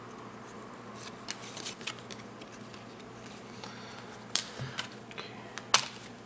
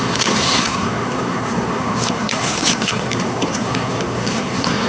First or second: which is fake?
second